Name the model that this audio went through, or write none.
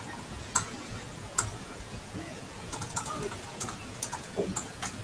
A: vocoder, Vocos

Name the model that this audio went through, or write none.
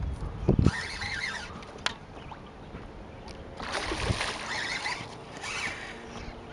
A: none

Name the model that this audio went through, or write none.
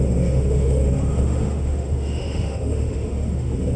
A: autoencoder, DAC-VAE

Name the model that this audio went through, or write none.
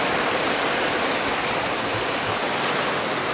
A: none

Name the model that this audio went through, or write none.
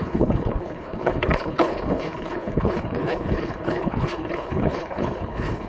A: codec, HILCodec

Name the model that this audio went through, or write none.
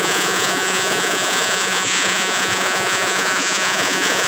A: vocoder, Vocos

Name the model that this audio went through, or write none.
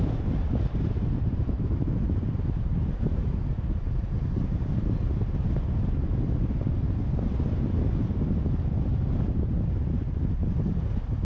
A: none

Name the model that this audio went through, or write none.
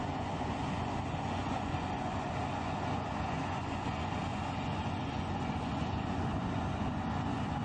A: vocoder, Vocos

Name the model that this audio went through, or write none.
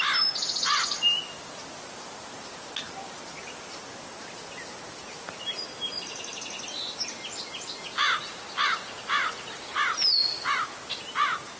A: none